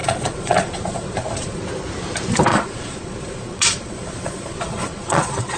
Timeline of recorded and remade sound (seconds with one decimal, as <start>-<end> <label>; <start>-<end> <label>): 0.0-1.6 remade; 1.6-2.5 recorded; 2.5-5.6 remade